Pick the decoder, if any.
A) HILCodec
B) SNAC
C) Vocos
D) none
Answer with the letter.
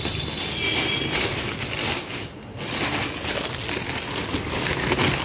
D